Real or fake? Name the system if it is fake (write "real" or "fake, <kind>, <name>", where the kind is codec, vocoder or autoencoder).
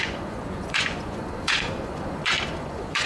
fake, vocoder, Vocos